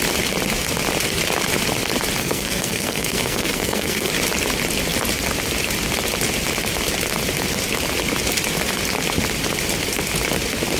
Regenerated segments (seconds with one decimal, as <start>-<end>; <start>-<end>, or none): 2.2-4.1